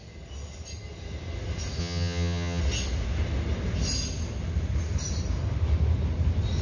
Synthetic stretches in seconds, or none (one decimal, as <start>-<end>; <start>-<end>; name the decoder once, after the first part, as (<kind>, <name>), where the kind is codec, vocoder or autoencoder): 1.8-2.6 (vocoder, HiFi-GAN)